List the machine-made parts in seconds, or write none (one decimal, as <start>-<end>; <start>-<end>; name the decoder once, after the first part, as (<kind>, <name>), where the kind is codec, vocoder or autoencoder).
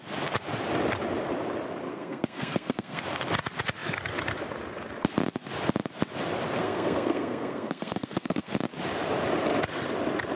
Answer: 1.9-3.0 (codec, SNAC); 6.6-8.5